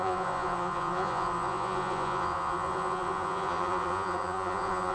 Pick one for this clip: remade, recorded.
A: remade